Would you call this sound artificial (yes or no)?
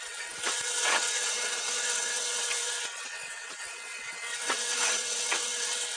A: yes